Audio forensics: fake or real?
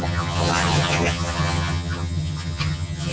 fake